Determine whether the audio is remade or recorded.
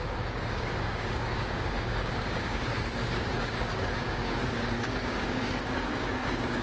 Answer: remade